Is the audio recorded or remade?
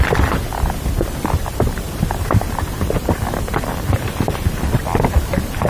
remade